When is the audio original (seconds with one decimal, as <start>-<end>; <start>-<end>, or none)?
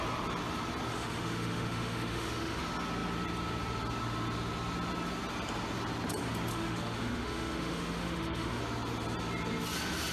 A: 0.0-0.9; 2.6-6.5; 8.6-10.1